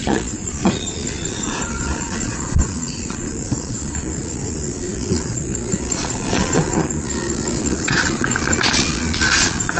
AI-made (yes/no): yes